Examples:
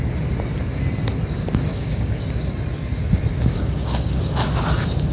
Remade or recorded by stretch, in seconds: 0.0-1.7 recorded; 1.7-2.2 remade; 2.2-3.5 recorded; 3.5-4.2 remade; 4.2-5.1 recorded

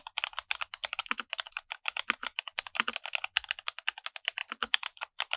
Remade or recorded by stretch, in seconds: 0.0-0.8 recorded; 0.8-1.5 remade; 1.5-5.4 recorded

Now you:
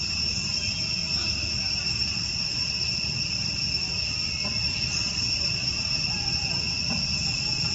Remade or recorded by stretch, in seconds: 0.0-7.7 recorded

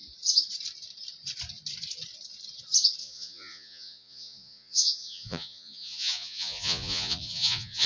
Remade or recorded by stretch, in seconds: 0.0-3.0 recorded; 3.0-7.9 remade

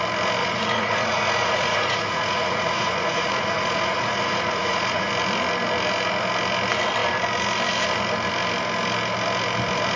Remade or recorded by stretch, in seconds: 0.0-0.4 recorded; 0.4-5.1 remade; 5.1-10.0 recorded